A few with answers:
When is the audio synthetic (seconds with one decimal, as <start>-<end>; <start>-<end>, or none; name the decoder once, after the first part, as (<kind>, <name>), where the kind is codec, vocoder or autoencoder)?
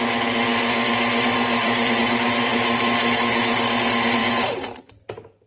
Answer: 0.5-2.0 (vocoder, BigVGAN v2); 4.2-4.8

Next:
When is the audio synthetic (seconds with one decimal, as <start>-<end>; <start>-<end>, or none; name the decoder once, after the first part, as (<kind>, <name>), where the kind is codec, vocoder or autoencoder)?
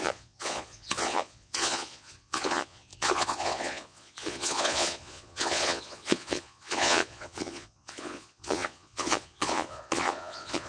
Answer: 0.0-10.7 (vocoder, Vocos)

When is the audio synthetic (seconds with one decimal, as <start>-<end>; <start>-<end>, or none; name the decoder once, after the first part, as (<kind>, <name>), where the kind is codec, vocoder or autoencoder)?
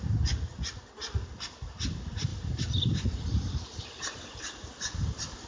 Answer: none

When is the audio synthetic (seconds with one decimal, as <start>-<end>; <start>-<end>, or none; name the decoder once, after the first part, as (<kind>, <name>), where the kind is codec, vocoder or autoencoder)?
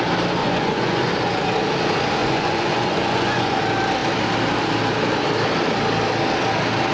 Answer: 0.4-1.1 (vocoder, Vocos); 2.2-3.6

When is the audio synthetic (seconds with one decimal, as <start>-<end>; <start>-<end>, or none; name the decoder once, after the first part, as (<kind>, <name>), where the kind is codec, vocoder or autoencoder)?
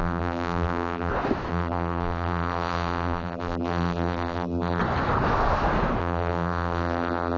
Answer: 0.0-1.1 (vocoder, BigVGAN v2); 1.5-4.8; 6.0-7.4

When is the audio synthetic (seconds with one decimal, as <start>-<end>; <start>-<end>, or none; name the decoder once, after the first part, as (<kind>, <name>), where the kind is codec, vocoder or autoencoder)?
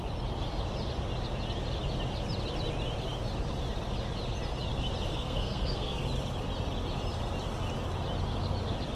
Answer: 5.1-6.0 (codec, SNAC)